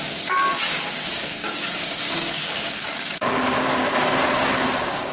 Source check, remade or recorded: remade